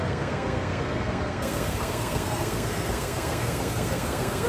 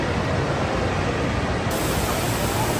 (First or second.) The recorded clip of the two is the second